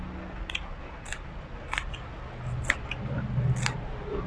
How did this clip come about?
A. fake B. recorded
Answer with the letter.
B